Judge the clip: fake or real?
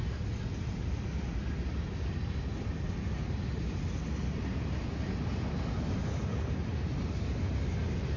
real